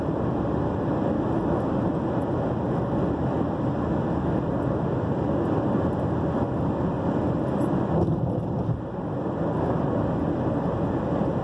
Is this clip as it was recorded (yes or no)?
yes